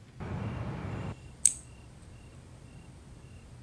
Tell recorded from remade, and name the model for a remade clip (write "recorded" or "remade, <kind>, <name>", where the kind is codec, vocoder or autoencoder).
recorded